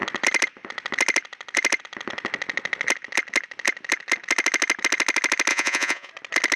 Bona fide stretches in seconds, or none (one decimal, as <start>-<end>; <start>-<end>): 0.0-5.5; 6.1-6.6